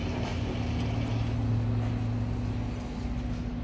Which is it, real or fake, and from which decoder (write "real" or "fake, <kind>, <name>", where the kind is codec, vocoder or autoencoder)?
real